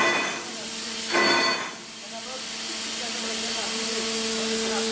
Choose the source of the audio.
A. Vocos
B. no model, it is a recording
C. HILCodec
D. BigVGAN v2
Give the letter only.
B